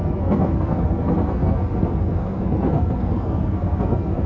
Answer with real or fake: fake